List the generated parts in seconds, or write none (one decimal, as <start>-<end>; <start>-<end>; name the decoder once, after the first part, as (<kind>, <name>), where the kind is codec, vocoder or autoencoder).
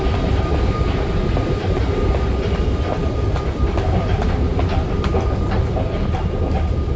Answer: none